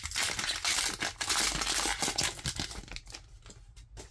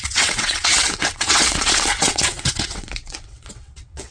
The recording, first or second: first